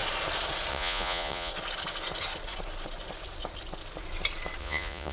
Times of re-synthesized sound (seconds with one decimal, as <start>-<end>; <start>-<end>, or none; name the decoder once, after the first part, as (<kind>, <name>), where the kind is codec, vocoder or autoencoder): 0.7-1.5 (vocoder, Vocos); 4.6-5.1